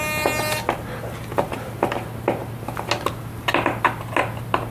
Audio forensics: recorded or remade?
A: recorded